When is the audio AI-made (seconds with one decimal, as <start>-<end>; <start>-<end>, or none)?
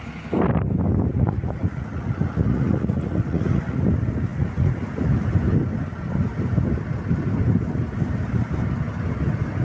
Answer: 1.1-3.8; 4.3-5.3